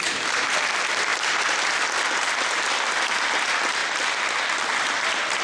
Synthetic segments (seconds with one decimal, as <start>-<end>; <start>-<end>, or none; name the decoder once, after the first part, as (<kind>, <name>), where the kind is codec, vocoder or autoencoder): none